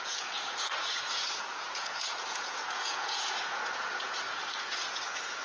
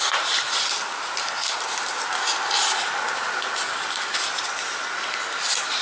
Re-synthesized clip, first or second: first